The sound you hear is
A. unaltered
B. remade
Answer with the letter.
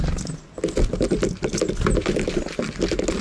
A